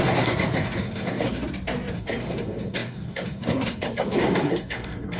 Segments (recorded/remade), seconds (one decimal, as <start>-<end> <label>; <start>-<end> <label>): 0.0-1.4 remade; 1.4-1.9 recorded; 1.9-5.2 remade